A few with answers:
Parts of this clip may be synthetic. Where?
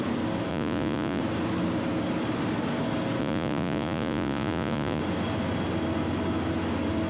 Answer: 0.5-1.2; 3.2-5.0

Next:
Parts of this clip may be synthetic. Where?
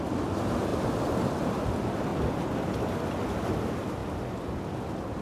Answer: none